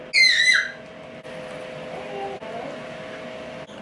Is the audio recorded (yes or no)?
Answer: yes